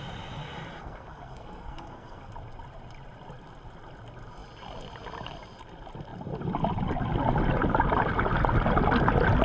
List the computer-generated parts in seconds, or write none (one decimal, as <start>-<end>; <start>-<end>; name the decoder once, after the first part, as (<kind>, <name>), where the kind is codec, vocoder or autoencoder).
0.8-2.3 (codec, SNAC)